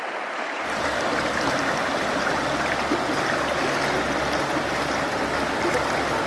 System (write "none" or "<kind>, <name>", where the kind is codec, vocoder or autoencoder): none